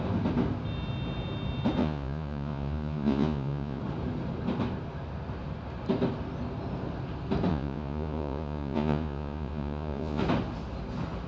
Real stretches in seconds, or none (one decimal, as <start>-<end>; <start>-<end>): 0.0-1.8; 3.8-7.5; 10.2-11.3